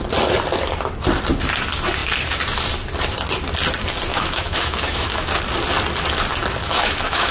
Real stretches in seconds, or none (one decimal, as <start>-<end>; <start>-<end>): 0.0-4.1; 5.3-6.6